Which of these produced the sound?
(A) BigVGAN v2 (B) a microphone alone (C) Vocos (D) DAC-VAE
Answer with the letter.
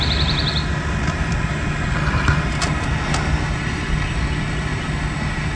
B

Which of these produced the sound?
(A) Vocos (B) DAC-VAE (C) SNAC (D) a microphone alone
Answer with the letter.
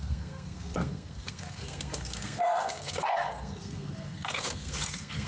C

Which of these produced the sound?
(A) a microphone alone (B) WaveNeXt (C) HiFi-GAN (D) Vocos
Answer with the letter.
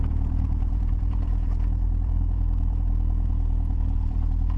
D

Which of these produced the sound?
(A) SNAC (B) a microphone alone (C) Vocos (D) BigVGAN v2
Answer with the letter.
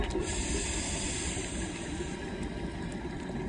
B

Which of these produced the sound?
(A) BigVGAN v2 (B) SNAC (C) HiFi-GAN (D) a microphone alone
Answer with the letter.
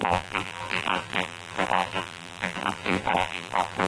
A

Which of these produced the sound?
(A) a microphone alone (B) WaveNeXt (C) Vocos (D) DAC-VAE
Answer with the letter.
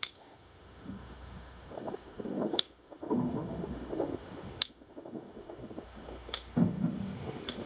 D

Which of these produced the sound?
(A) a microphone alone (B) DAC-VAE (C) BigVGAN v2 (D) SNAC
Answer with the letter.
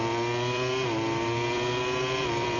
C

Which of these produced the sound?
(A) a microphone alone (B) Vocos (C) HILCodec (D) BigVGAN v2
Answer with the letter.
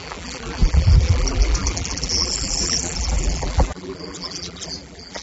D